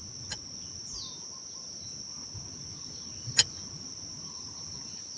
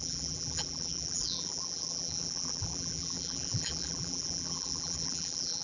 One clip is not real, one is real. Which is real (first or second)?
first